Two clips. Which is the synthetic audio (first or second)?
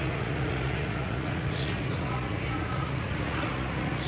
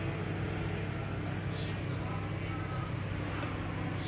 first